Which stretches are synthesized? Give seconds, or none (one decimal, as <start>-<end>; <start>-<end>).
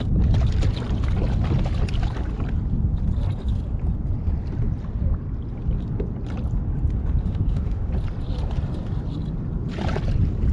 7.2-7.9